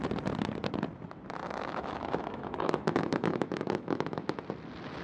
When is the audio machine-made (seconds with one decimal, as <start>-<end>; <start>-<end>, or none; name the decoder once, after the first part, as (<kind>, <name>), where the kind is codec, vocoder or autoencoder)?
1.4-4.4 (autoencoder, DAC-VAE)